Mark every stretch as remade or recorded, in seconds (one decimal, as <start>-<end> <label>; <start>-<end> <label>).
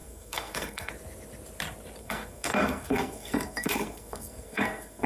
0.0-0.9 remade; 0.9-2.0 recorded; 2.0-5.1 remade